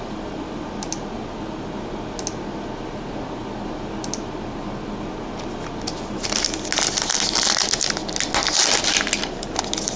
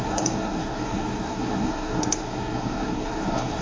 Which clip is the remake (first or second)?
second